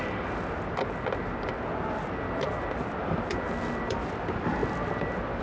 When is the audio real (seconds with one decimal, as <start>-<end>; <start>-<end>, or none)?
0.0-5.4